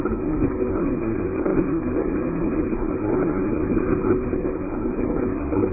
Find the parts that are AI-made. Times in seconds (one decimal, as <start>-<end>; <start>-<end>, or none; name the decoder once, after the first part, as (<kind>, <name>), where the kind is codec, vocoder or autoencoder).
0.0-5.7 (codec, SNAC)